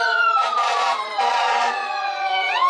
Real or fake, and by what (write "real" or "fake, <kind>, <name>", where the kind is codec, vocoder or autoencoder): fake, vocoder, Vocos